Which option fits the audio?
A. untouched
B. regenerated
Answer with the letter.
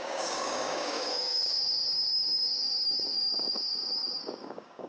B